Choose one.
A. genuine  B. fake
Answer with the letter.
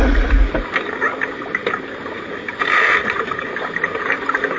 A